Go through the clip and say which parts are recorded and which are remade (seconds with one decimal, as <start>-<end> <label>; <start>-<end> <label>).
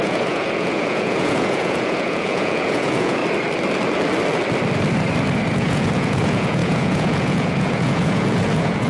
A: 0.0-3.2 remade; 3.2-5.5 recorded; 5.5-8.9 remade